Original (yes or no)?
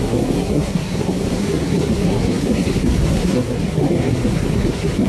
no